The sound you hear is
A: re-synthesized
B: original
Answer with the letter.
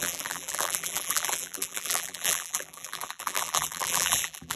A